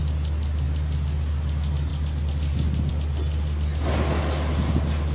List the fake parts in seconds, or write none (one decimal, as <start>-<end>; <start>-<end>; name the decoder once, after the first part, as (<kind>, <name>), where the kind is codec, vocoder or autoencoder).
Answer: none